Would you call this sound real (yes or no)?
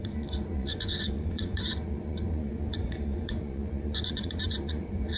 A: no